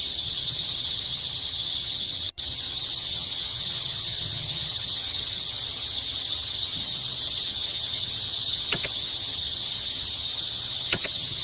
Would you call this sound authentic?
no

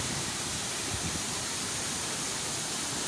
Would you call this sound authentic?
no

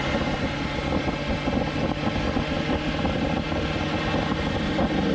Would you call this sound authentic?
yes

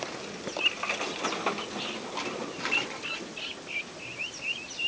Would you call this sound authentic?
no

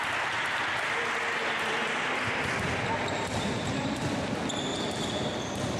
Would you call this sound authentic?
yes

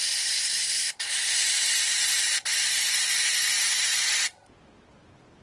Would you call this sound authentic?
yes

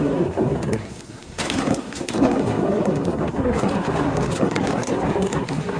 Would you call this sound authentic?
no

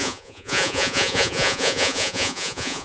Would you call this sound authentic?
no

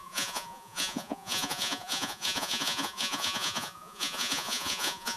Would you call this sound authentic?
no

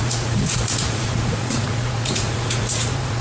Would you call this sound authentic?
no